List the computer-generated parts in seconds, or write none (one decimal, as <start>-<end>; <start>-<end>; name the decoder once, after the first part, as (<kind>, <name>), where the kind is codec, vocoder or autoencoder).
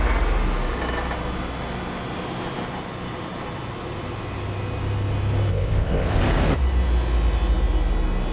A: 5.5-6.2 (codec, ZipCodec)